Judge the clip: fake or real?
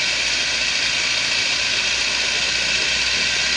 real